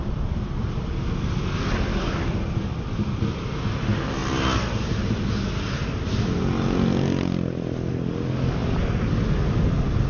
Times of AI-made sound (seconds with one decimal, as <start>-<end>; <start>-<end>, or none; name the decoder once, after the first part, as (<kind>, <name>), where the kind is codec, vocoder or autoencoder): none